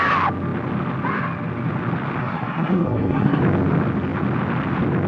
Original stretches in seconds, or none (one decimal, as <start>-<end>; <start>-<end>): 0.0-2.2; 3.4-5.1